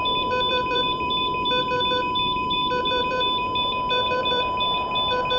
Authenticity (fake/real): fake